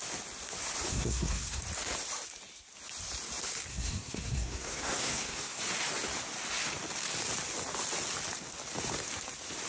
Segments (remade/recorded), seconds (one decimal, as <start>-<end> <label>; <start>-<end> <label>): 0.0-0.9 recorded; 0.9-1.6 remade; 1.6-3.7 recorded; 3.7-5.6 remade; 5.6-9.7 recorded